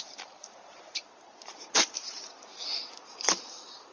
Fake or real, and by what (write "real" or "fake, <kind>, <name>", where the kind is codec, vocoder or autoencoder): fake, vocoder, BigVGAN v2